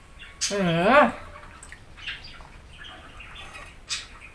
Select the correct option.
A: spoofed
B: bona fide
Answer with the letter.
B